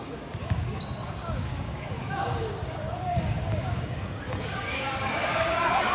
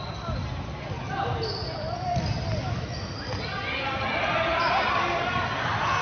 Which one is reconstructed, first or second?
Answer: first